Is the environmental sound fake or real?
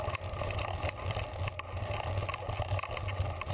real